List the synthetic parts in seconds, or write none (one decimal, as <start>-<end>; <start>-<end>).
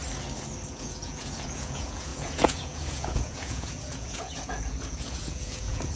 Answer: 0.7-6.0